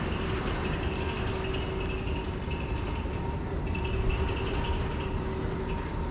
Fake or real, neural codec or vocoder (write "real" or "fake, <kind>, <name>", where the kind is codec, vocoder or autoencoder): real